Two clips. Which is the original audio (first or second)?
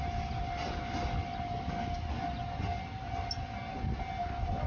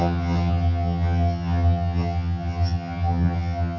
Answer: first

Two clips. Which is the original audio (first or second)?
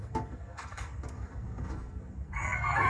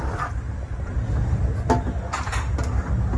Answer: second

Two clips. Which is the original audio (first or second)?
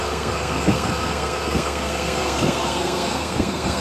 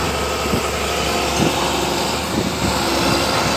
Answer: second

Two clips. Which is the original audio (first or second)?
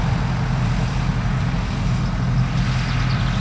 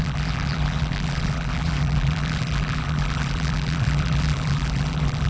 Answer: first